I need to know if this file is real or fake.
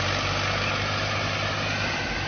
real